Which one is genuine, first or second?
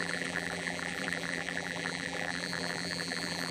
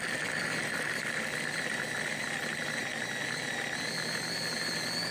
second